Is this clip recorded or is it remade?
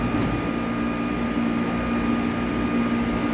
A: recorded